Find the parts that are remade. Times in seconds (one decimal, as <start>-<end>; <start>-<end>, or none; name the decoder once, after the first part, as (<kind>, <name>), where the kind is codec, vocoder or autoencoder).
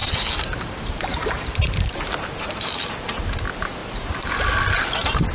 0.0-3.2 (vocoder, BigVGAN v2); 3.8-4.5